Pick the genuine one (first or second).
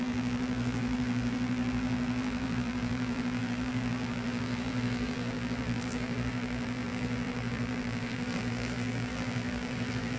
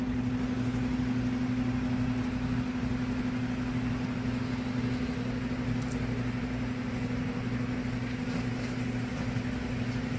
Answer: second